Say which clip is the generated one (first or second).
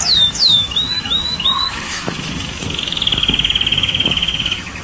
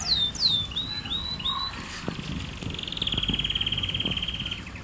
first